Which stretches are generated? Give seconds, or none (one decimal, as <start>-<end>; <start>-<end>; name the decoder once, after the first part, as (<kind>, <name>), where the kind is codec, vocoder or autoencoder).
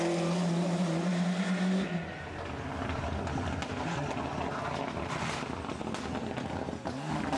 none